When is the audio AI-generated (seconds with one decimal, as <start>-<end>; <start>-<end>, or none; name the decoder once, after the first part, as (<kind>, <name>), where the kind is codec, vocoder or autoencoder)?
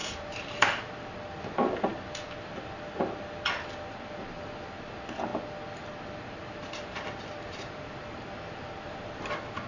0.0-1.1 (vocoder, BigVGAN v2); 6.6-9.1